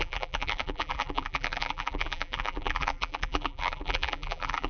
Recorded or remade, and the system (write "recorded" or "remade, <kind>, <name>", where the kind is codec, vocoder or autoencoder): remade, vocoder, BigVGAN v2